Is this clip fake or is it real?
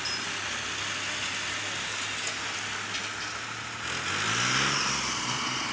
real